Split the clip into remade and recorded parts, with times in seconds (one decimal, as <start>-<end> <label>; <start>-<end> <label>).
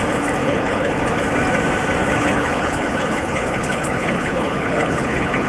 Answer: 0.0-0.4 recorded; 0.4-1.0 remade; 1.0-2.0 recorded; 2.0-5.5 remade